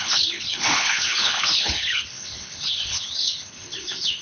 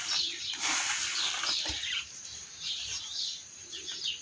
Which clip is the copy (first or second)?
first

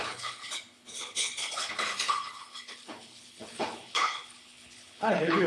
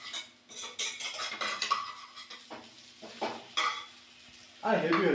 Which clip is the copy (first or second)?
first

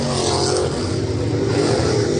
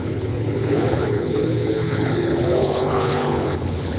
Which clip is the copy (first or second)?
second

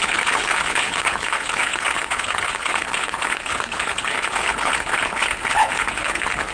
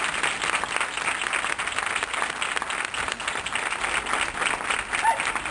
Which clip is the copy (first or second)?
first